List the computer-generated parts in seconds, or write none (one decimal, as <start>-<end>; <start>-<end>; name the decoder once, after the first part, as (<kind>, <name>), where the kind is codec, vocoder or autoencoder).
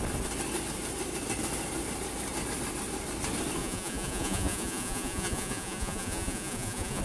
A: 3.6-7.0 (vocoder, Vocos)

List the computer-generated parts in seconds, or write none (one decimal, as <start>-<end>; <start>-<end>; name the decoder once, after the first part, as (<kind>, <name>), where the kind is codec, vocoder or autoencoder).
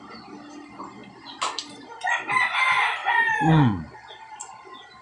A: 3.0-4.1 (vocoder, Vocos)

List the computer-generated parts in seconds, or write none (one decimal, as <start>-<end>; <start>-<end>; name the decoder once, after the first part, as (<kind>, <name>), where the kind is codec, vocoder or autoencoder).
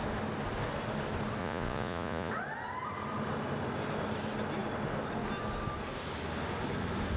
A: 1.4-2.3 (vocoder, Vocos)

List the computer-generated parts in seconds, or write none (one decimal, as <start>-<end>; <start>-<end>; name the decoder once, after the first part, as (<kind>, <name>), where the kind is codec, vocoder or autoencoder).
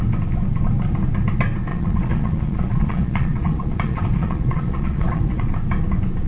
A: 1.7-5.5 (vocoder, Vocos)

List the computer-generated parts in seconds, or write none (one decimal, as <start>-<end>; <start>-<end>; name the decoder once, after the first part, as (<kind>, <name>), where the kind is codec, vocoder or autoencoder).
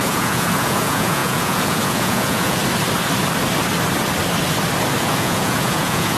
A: 0.0-2.6 (vocoder, Vocos); 5.0-6.2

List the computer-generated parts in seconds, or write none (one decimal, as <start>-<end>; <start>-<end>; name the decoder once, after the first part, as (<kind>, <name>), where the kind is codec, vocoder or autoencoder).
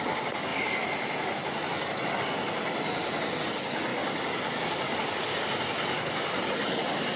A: none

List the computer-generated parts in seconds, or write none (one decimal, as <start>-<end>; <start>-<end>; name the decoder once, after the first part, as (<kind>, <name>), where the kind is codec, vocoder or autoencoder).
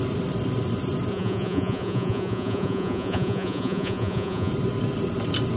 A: 1.1-4.5 (vocoder, Vocos)